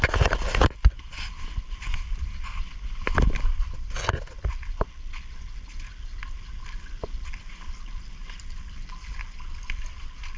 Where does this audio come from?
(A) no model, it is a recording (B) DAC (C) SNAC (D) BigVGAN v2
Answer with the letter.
A